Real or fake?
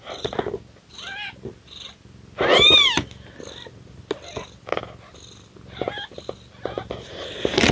real